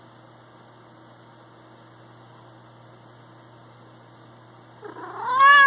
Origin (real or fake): real